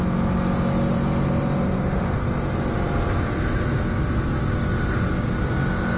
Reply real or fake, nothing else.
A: real